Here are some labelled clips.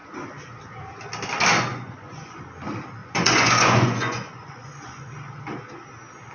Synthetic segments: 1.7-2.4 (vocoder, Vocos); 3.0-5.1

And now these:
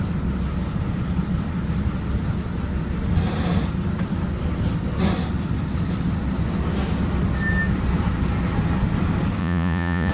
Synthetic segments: 9.4-10.1 (vocoder, Vocos)

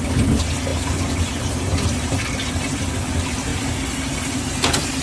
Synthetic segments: none

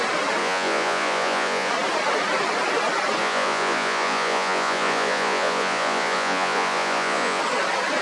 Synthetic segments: 0.4-1.7 (vocoder, Vocos); 3.2-7.4

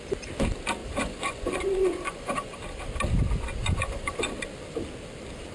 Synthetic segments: 0.8-2.6 (vocoder, Vocos); 3.6-4.2

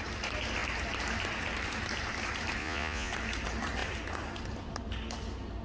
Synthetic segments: 2.6-3.1 (vocoder, Vocos)

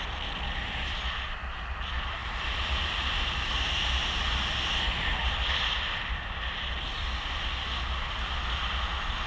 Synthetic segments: none